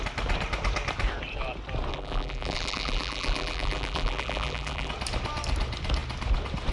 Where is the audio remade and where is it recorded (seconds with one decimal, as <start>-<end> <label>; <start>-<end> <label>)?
0.0-1.9 recorded; 1.9-4.9 remade; 4.9-6.7 recorded